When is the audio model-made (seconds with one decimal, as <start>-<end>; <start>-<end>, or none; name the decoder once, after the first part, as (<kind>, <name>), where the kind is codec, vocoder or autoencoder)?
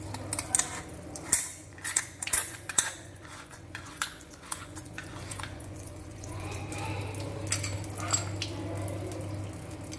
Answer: 1.5-6.6 (vocoder, Vocos)